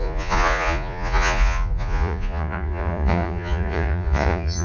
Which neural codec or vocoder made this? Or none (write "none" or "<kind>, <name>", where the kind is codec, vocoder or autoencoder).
vocoder, Vocos